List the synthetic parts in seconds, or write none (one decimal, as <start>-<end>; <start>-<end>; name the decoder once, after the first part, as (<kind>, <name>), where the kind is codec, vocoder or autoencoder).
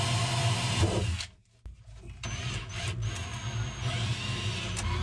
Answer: none